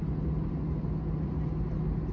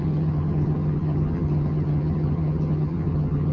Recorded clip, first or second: first